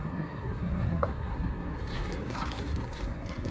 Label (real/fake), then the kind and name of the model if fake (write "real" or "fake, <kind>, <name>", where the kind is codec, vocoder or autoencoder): fake, codec, SNAC